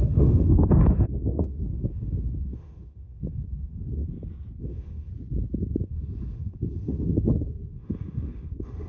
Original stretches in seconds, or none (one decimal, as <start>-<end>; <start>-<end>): 4.0-4.6; 5.1-5.8